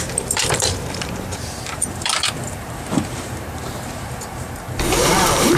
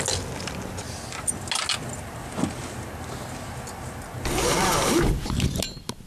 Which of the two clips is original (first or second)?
second